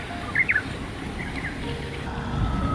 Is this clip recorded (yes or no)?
yes